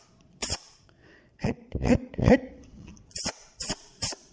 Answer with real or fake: fake